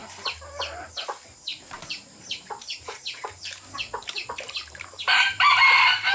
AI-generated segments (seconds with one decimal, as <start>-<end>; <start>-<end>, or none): 0.0-0.9; 1.5-5.2